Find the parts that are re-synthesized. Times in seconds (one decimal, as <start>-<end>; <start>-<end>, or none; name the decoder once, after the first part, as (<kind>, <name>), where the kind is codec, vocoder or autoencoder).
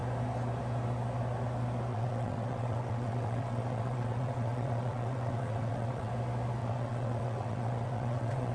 1.9-6.1 (vocoder, WaveNeXt); 6.6-8.5